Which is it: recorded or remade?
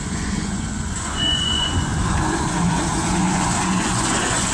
remade